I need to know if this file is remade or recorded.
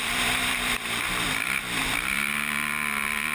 remade